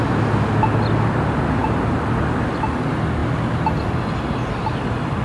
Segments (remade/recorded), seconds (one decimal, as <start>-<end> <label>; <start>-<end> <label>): 0.0-1.6 recorded; 1.6-2.2 remade; 2.2-5.2 recorded